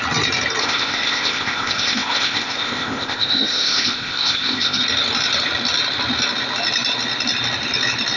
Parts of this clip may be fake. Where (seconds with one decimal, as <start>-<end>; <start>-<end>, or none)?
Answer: 0.6-4.8